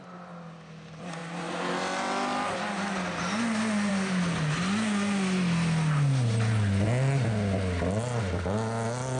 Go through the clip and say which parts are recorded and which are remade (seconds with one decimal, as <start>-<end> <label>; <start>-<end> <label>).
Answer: 0.0-9.2 recorded